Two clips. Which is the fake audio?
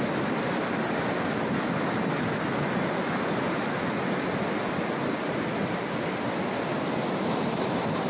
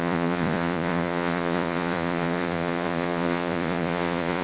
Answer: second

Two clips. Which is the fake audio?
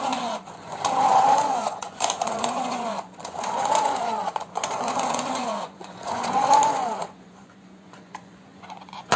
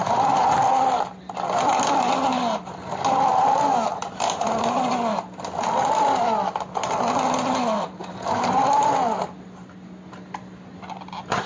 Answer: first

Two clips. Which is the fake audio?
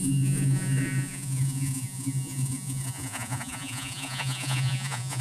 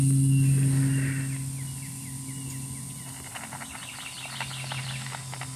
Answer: first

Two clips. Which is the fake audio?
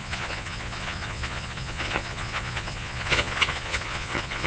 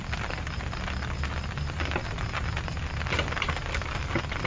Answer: first